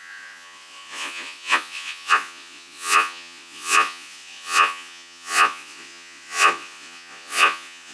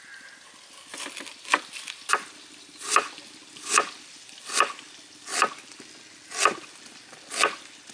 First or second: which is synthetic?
first